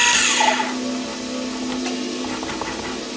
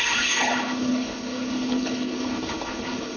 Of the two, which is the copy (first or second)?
second